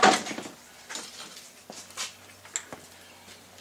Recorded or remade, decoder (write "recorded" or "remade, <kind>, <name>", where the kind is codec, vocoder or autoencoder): recorded